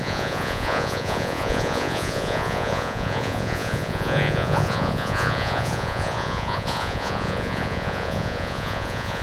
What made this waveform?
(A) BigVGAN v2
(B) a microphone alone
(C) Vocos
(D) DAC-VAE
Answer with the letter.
C